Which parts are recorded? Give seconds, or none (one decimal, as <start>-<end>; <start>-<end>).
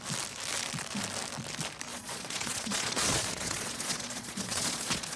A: 0.0-1.9